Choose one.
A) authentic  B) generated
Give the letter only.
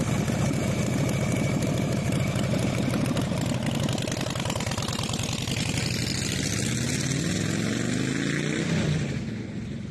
A